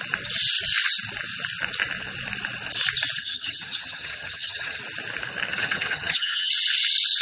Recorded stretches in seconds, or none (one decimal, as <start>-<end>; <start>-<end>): 0.0-3.2; 4.8-5.5; 6.5-7.2